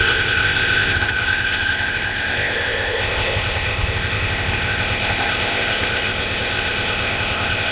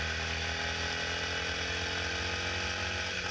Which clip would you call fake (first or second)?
first